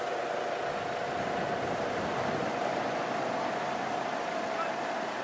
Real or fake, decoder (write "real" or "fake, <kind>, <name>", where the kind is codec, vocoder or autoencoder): real